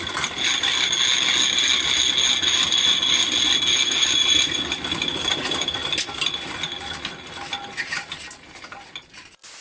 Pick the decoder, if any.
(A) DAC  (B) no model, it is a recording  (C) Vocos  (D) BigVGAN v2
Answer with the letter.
B